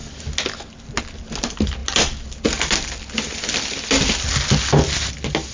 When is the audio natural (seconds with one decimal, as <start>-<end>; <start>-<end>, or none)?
0.0-5.5